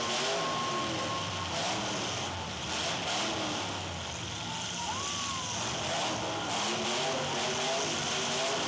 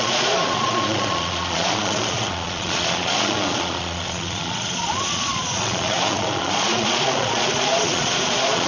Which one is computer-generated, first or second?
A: second